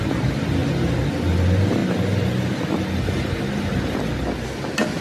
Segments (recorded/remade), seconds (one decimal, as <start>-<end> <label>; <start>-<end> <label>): 0.0-5.0 recorded